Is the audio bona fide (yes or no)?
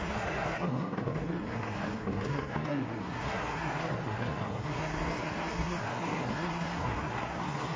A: no